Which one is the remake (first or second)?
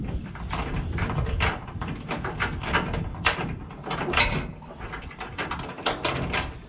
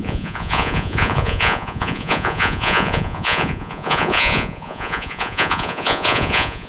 second